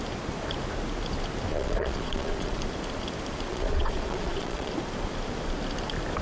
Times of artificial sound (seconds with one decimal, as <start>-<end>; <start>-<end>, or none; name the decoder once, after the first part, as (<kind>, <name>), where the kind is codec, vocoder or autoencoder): 1.5-2.6 (vocoder, Vocos); 3.5-4.7